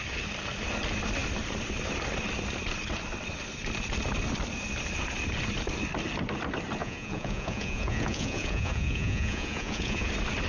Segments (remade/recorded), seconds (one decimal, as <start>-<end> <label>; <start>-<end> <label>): 0.0-6.8 recorded; 6.8-10.1 remade; 10.1-10.5 recorded